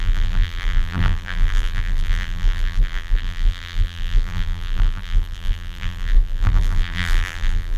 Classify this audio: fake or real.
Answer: fake